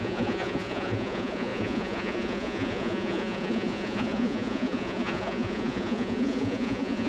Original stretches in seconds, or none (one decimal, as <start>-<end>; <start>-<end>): none